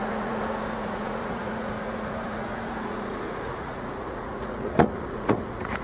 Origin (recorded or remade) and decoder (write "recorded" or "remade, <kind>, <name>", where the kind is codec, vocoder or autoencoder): remade, vocoder, Vocos